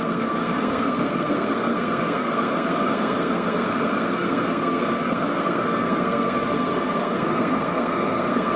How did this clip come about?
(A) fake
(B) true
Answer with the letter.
A